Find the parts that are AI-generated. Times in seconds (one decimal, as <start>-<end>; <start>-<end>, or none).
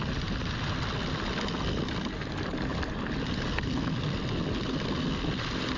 0.0-0.5; 2.7-3.2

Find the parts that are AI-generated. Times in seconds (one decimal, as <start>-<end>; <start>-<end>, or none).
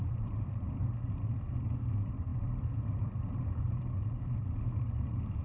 0.0-1.8; 2.3-4.5